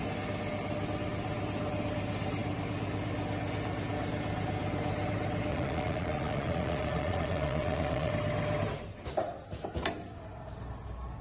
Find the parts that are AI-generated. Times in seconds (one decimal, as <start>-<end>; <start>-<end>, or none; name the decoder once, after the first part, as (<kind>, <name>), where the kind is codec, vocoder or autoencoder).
5.5-8.1 (vocoder, Vocos)